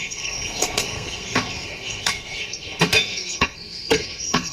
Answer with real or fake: fake